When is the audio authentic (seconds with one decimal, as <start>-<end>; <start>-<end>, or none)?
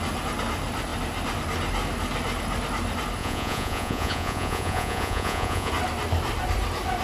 0.0-3.2; 5.7-7.0